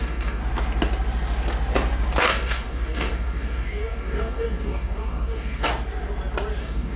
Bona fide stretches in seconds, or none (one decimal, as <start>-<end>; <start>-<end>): 0.4-2.2; 5.7-6.6